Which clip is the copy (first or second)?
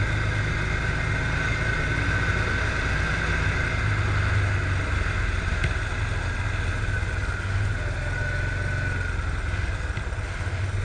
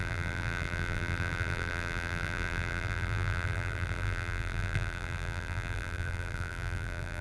second